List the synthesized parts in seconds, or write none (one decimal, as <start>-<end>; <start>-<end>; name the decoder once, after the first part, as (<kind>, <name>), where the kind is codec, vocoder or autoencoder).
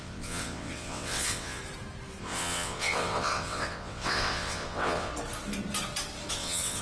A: 0.0-1.6 (vocoder, WaveNeXt); 2.2-5.1; 6.3-6.8